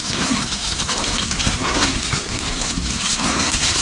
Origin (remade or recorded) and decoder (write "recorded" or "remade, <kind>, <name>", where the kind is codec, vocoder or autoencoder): remade, codec, SNAC